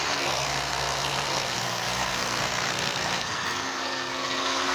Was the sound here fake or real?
fake